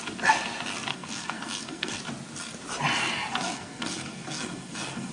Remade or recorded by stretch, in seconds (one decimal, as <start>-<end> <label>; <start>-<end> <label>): 0.0-0.9 recorded; 0.9-2.0 remade; 2.0-3.3 recorded; 3.3-5.1 remade